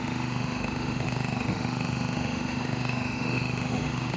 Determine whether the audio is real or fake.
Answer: fake